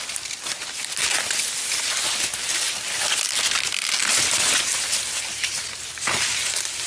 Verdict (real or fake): real